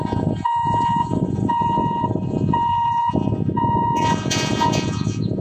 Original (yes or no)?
no